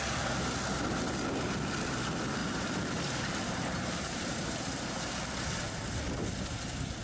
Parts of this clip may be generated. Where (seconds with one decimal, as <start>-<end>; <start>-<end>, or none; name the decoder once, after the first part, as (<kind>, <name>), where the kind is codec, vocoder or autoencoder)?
2.4-5.1 (vocoder, BigVGAN v2)